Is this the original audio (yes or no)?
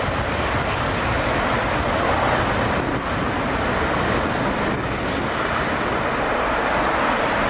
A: no